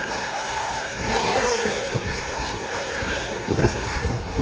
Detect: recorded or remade remade